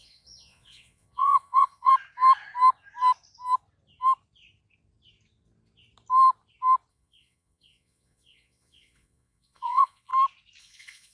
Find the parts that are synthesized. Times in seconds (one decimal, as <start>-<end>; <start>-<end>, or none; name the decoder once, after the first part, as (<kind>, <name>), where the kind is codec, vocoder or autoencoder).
0.0-1.9 (vocoder, Vocos); 6.9-10.1; 10.6-11.1